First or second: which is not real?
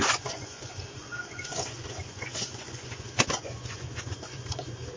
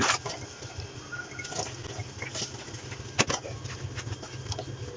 first